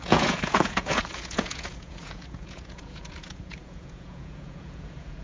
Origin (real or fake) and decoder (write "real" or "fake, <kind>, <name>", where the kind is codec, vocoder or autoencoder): fake, vocoder, Vocos